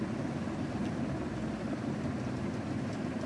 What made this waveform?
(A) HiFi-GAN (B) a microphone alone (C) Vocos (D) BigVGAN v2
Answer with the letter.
B